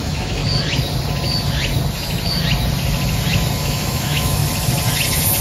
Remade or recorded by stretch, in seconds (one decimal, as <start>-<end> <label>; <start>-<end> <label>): 0.0-0.4 remade; 0.4-3.6 recorded; 3.6-4.4 remade; 4.4-5.4 recorded